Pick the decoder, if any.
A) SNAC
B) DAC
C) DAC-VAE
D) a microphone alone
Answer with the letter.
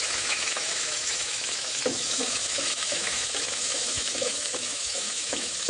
C